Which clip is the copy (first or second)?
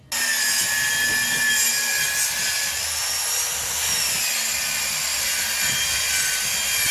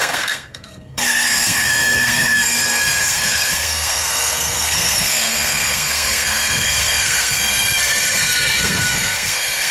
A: second